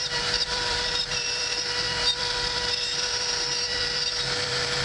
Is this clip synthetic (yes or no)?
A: yes